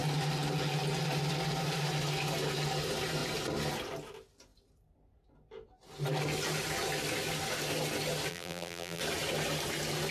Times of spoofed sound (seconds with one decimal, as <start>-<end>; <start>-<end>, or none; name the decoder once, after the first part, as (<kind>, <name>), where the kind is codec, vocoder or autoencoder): 8.3-9.0 (vocoder, BigVGAN v2)